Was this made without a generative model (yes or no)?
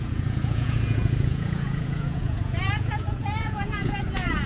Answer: no